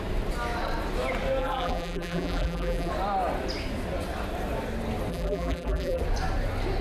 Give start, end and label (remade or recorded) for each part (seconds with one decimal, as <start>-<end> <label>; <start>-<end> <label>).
0.0-1.4 recorded; 1.4-2.9 remade; 2.9-5.1 recorded; 5.1-6.0 remade; 6.0-6.8 recorded